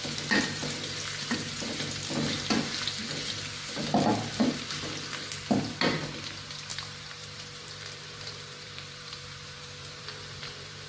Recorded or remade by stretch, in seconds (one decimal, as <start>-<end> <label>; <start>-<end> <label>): 0.0-6.7 recorded; 6.7-10.9 remade